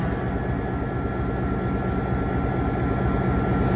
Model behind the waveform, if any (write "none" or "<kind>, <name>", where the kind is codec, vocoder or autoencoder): none